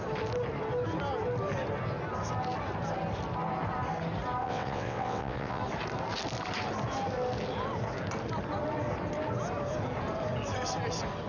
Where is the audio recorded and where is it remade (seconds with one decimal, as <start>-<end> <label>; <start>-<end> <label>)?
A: 0.0-4.4 recorded; 4.4-5.6 remade; 5.6-11.3 recorded